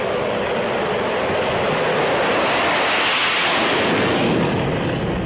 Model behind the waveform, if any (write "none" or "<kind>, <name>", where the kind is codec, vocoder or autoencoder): none